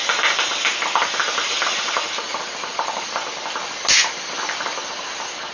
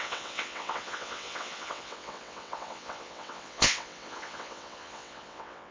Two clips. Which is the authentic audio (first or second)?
first